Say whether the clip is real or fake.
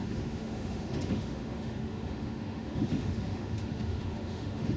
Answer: fake